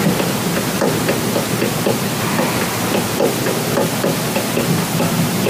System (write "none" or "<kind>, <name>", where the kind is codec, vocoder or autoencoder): none